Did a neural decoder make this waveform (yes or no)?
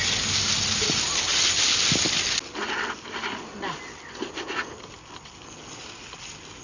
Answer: no